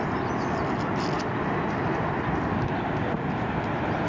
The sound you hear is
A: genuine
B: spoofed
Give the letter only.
A